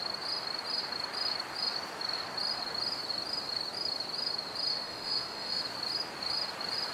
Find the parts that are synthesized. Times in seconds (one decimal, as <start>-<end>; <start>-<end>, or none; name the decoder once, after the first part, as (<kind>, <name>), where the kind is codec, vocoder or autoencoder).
4.7-5.6 (autoencoder, DAC-VAE)